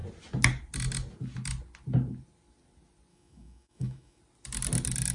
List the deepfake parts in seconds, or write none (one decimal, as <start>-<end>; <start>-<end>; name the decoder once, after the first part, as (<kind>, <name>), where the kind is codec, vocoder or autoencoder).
3.1-4.2 (autoencoder, DAC-VAE)

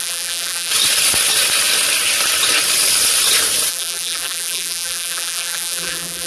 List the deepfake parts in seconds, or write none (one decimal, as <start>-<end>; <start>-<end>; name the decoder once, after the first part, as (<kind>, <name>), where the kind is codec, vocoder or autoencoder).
0.0-0.7 (vocoder, BigVGAN v2); 3.7-6.3

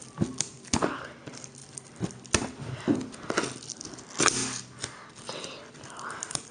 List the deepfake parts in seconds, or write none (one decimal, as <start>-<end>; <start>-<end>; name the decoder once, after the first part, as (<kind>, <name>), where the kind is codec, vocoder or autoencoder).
none